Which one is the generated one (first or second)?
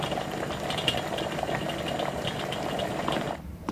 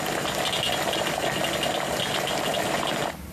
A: first